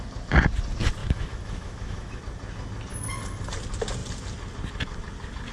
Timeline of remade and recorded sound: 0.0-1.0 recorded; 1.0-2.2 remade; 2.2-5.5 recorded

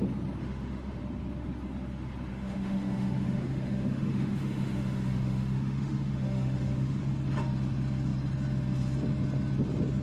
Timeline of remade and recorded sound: 0.0-0.4 recorded; 0.4-1.0 remade; 1.0-2.3 recorded; 2.3-7.0 remade; 7.0-10.0 recorded

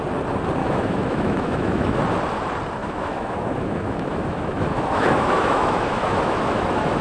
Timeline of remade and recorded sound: 0.0-0.6 recorded; 0.6-2.0 remade; 2.0-2.8 recorded; 2.8-7.0 remade

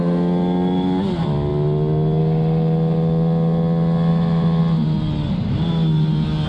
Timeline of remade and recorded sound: 0.0-4.1 recorded; 4.1-4.6 remade; 4.6-6.5 recorded

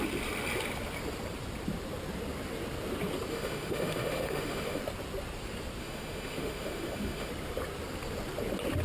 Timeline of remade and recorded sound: 0.0-3.3 recorded; 3.3-4.8 remade; 4.8-5.8 recorded; 5.8-7.3 remade; 7.3-8.8 recorded